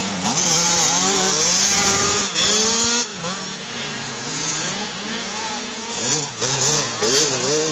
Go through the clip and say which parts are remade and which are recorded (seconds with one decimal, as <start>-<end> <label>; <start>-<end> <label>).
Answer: 0.0-2.5 remade; 2.5-3.1 recorded; 3.1-7.1 remade; 7.1-7.7 recorded